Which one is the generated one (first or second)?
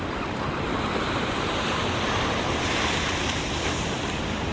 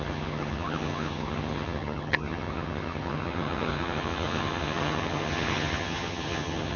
second